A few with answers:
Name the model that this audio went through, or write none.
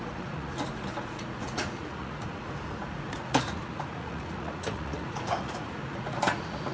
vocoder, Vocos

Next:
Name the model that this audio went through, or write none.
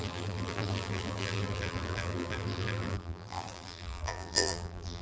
vocoder, BigVGAN v2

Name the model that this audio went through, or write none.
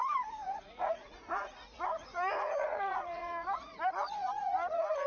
vocoder, Vocos